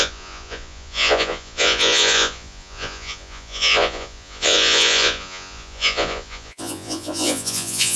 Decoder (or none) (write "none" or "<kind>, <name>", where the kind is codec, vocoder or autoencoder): vocoder, Vocos